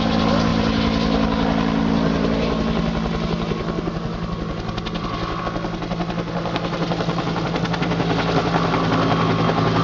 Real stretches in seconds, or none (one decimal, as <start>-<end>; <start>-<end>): 0.0-9.8